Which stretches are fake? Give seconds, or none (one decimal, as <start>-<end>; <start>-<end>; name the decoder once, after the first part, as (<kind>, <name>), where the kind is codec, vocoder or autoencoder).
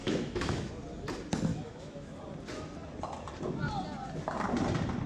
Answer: 0.0-0.7 (autoencoder, DAC-VAE); 1.5-2.2